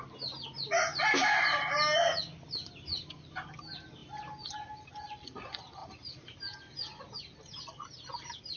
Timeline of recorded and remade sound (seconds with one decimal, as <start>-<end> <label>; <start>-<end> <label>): 0.0-8.6 recorded